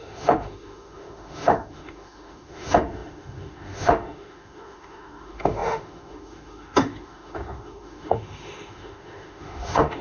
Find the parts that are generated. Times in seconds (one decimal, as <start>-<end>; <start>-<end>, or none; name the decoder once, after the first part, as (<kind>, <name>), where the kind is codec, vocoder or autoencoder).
0.0-10.0 (autoencoder, DAC-VAE)